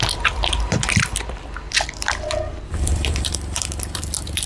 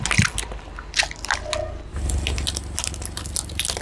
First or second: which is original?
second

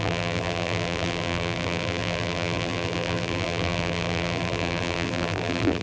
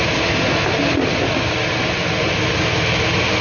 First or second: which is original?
second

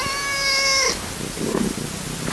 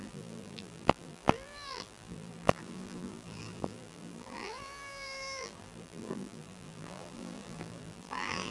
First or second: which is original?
first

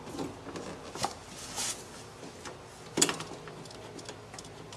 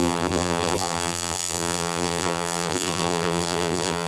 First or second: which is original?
first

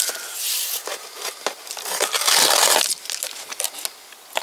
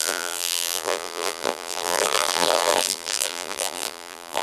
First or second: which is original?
first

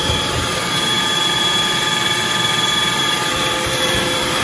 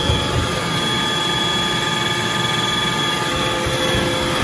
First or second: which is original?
second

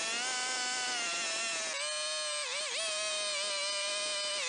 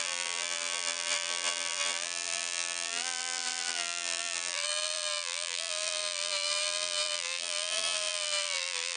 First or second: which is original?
first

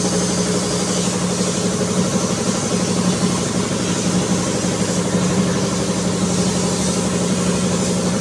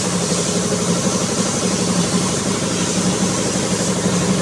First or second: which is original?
first